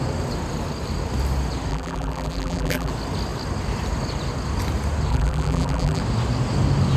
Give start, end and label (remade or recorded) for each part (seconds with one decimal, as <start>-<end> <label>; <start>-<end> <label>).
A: 0.0-1.7 recorded; 1.7-2.9 remade; 2.9-5.1 recorded; 5.1-6.0 remade; 6.0-7.0 recorded